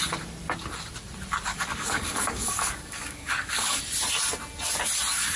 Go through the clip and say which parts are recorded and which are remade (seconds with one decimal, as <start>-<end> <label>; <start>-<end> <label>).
0.0-1.5 recorded; 1.5-3.8 remade; 3.8-5.4 recorded

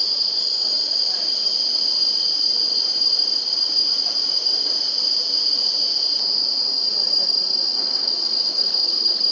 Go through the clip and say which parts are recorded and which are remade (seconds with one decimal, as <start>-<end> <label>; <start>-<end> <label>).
0.0-8.5 recorded; 8.5-9.3 remade

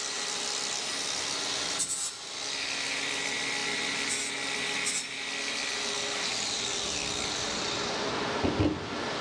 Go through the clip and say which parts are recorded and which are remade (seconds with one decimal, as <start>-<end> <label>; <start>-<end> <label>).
0.0-9.2 recorded

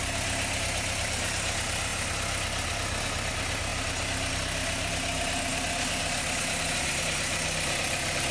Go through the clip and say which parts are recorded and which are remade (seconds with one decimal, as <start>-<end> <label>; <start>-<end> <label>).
0.0-8.3 recorded

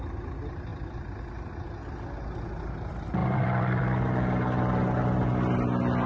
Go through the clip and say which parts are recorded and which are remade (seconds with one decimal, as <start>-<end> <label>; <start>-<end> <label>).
0.0-0.7 recorded; 0.7-1.2 remade; 1.2-3.2 recorded; 3.2-3.8 remade; 3.8-6.1 recorded

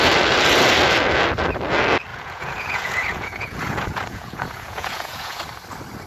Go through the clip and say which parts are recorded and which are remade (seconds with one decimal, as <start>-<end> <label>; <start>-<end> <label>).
0.0-2.1 recorded; 2.1-5.4 remade; 5.4-6.1 recorded

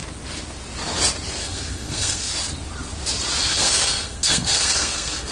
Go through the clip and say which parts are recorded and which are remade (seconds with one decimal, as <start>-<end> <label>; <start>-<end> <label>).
0.0-1.4 recorded; 1.4-2.3 remade; 2.3-3.4 recorded; 3.4-5.3 remade

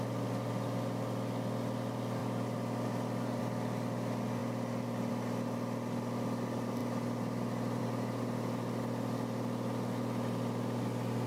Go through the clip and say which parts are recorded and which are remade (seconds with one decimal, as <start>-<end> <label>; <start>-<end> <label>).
0.0-11.3 recorded